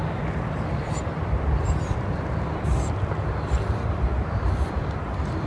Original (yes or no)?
no